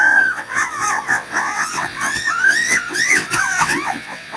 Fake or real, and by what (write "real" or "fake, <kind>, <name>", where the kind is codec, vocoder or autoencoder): fake, vocoder, WaveNeXt